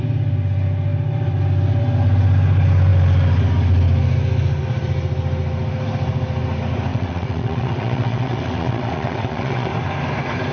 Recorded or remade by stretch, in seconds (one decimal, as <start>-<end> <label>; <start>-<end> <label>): 0.0-6.9 recorded; 6.9-9.7 remade; 9.7-10.5 recorded